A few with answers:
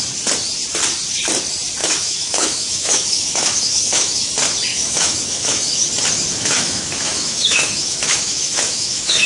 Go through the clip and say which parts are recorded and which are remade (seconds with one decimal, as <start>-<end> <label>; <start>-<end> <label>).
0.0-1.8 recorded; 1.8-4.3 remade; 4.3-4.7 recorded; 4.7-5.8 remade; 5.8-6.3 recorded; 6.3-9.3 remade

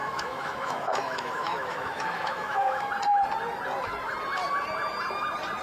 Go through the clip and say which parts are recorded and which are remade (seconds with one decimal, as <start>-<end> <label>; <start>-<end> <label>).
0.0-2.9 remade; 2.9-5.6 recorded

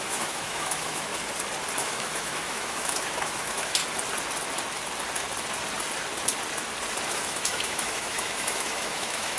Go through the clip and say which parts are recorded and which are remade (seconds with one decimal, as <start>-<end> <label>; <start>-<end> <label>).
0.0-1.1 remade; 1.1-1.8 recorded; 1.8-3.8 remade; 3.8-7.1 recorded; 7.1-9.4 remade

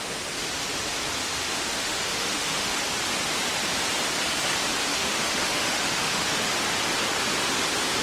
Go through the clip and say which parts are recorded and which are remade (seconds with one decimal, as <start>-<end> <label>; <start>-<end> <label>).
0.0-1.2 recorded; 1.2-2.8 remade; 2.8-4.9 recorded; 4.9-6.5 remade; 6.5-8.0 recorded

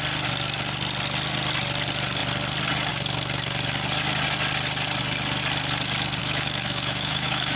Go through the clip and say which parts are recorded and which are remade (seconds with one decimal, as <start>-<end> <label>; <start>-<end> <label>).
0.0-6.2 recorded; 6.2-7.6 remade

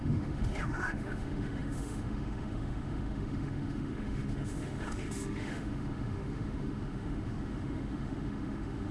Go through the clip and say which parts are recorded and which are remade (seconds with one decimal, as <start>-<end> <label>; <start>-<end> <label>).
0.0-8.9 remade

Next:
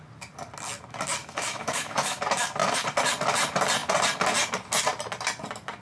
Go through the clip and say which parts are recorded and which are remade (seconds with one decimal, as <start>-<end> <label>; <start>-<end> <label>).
0.0-1.2 recorded; 1.2-2.2 remade; 2.2-5.8 recorded

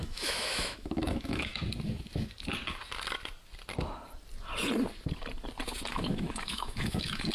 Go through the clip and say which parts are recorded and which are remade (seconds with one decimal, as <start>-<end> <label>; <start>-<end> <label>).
0.0-1.5 remade; 1.5-5.9 recorded; 5.9-7.3 remade